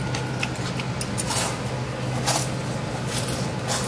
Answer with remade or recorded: recorded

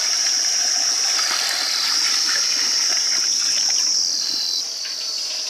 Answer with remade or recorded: remade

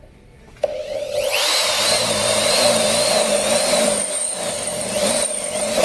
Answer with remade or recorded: remade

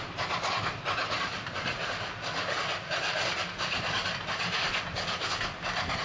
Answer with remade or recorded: recorded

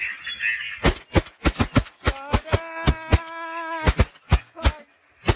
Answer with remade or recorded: recorded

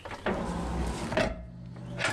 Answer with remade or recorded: recorded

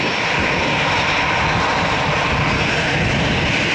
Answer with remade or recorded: recorded